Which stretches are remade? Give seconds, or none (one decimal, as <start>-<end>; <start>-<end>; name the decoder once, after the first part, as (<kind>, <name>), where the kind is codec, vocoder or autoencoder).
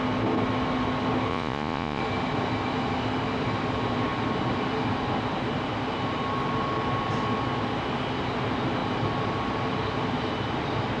1.3-2.0 (vocoder, Vocos)